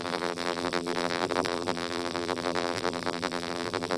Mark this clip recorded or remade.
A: remade